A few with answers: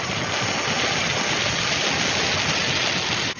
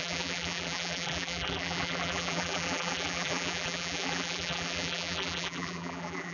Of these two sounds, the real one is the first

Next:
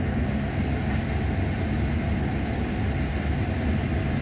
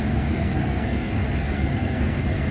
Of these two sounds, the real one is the first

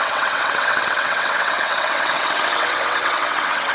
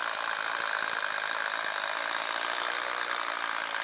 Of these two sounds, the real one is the second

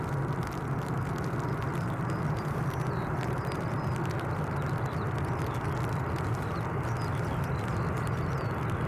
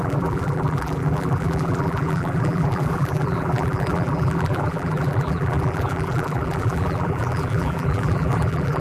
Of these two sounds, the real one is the first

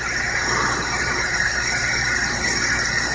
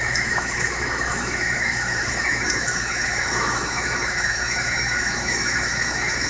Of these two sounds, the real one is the first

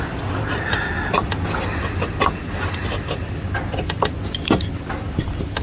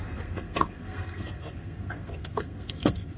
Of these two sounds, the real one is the first